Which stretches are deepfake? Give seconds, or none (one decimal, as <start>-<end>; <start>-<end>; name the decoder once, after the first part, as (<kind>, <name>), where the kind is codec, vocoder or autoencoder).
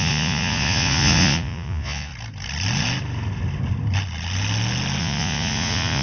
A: 0.0-2.1 (vocoder, Vocos); 5.0-6.0